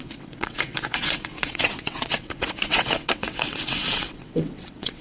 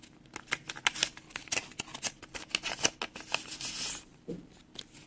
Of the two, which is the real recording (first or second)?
second